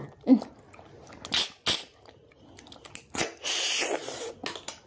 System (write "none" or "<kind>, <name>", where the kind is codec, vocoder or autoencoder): none